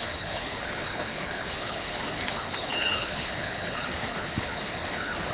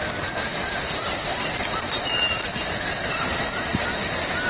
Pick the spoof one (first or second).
first